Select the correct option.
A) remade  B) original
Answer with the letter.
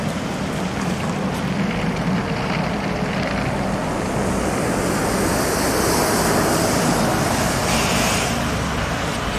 B